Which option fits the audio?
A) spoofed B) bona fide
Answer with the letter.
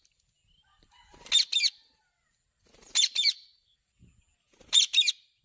B